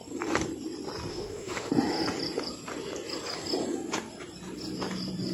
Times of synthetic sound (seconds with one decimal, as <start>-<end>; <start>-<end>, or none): 1.1-1.7